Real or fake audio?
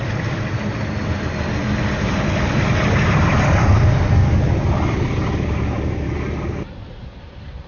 real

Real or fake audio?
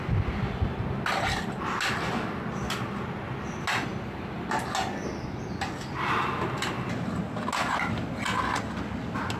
real